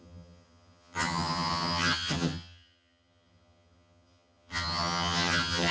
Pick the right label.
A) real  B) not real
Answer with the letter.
B